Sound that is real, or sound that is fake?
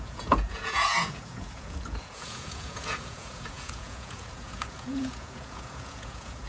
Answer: fake